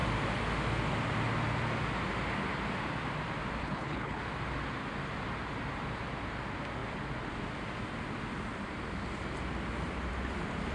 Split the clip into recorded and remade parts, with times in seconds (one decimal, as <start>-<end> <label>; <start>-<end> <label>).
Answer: 0.0-3.6 recorded; 3.6-4.2 remade; 4.2-10.7 recorded